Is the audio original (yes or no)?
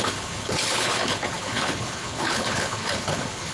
no